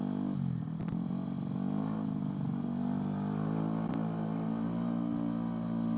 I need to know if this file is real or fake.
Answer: real